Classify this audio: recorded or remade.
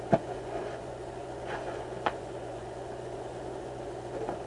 remade